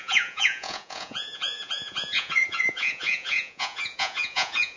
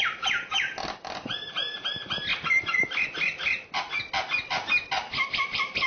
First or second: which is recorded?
second